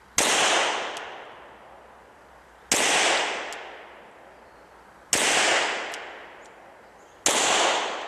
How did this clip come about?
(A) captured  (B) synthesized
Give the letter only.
A